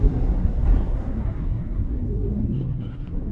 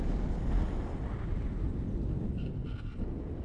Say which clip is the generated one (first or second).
first